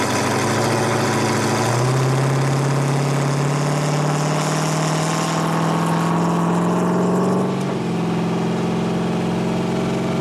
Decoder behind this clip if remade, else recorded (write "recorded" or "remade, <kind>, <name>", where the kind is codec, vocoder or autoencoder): recorded